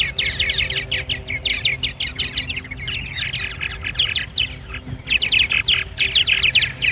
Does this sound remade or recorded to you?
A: recorded